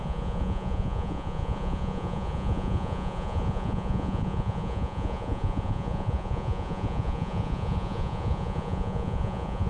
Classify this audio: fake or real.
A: fake